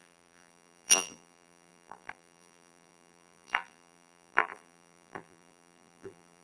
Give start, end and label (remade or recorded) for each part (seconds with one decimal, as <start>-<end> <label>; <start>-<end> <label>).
0.0-6.4 remade